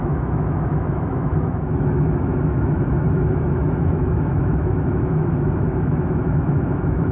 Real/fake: fake